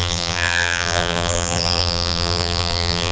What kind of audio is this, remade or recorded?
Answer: remade